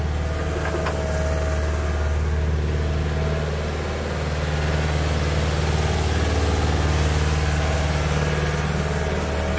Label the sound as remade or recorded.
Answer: recorded